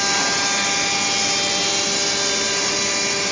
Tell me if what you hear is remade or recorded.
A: recorded